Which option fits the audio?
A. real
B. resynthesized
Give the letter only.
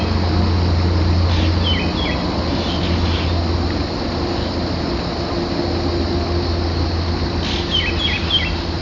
A